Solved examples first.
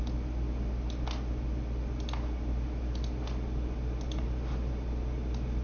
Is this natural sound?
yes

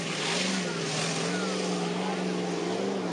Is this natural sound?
yes